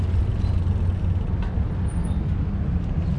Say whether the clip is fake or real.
real